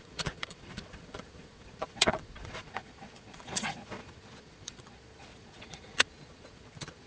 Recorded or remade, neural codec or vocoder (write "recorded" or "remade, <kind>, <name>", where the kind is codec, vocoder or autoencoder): remade, vocoder, Vocos